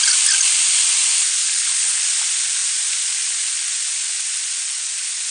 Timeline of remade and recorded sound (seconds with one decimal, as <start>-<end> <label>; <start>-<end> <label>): 0.0-1.4 recorded; 1.4-2.0 remade; 2.0-5.3 recorded